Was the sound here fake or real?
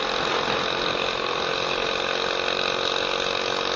real